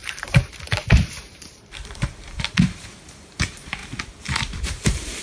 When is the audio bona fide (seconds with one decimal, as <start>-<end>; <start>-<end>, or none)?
3.8-4.6